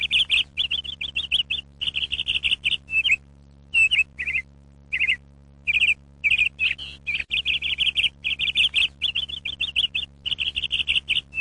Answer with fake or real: fake